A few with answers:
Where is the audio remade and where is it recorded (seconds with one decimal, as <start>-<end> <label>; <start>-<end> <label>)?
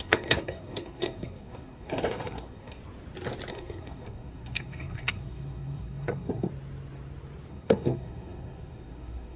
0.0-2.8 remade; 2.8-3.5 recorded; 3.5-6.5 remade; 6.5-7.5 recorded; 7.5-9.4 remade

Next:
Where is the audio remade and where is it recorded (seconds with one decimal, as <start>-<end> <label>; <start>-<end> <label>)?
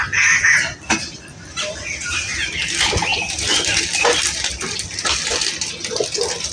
0.0-6.5 recorded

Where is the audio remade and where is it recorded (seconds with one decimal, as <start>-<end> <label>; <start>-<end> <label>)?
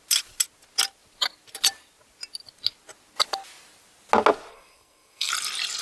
0.0-4.5 recorded; 4.5-5.3 remade; 5.3-5.8 recorded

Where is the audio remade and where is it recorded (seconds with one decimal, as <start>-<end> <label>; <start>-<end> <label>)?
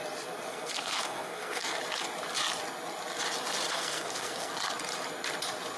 0.0-0.5 recorded; 0.5-1.8 remade; 1.8-3.7 recorded; 3.7-4.5 remade; 4.5-5.8 recorded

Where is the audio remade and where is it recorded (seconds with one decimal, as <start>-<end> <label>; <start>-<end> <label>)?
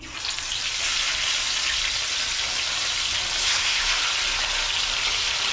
0.0-3.4 recorded; 3.4-4.0 remade; 4.0-5.5 recorded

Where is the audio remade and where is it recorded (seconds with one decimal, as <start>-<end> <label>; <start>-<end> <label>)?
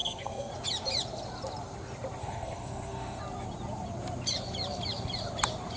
0.0-0.5 remade; 0.5-2.2 recorded; 2.2-3.2 remade; 3.2-5.8 recorded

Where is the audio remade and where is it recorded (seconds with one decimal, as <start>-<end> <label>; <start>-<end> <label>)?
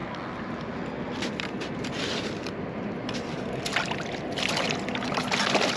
0.0-5.8 recorded